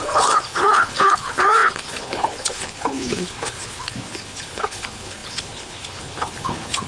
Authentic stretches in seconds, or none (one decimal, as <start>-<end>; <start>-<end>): none